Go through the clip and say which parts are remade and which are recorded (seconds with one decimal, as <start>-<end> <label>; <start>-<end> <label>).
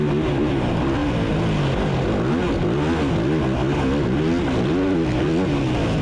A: 0.0-6.0 recorded